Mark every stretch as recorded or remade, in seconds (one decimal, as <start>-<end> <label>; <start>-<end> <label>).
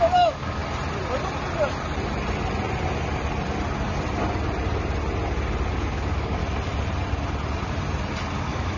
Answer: 0.0-0.6 remade; 0.6-5.7 recorded; 5.7-6.4 remade; 6.4-8.4 recorded; 8.4-8.8 remade